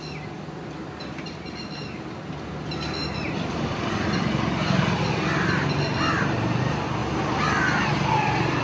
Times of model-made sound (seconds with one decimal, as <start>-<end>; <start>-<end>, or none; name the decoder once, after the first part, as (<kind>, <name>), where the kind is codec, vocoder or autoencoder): 0.0-7.0 (vocoder, BigVGAN v2); 8.1-8.6